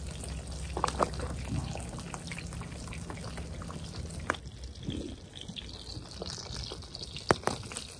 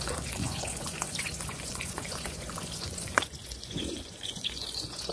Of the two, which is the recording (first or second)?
first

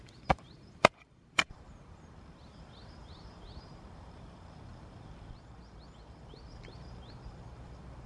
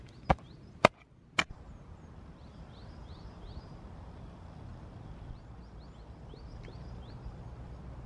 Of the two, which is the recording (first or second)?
second